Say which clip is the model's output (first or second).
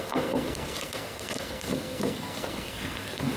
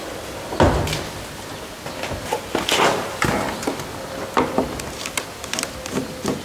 first